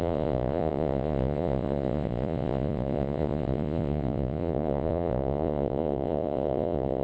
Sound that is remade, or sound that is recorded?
remade